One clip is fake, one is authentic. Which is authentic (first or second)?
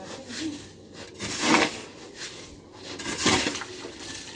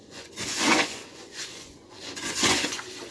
first